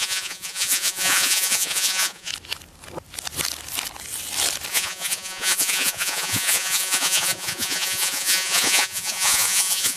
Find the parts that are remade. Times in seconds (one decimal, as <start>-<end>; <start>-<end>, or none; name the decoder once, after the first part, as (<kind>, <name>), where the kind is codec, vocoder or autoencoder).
0.0-2.3 (vocoder, Vocos); 4.7-10.0